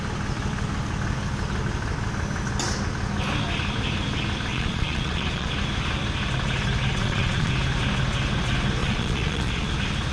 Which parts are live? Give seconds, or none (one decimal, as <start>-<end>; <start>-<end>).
0.0-4.5; 5.5-7.0; 7.5-8.8; 9.7-10.1